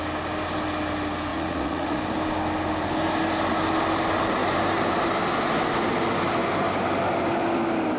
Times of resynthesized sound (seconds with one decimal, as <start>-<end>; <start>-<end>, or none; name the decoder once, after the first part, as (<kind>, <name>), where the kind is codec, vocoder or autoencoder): 1.3-2.0 (vocoder, Vocos)